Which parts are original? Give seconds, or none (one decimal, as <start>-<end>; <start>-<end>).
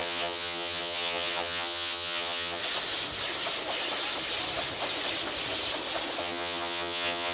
2.6-6.2